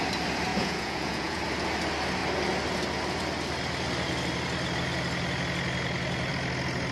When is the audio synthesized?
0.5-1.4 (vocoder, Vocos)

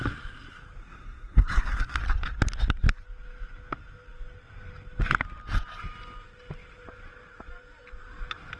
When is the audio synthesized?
0.8-2.0 (codec, SNAC)